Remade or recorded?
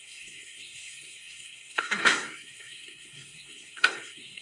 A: remade